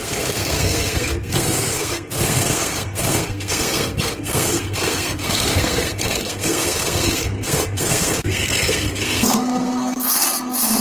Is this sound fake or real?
fake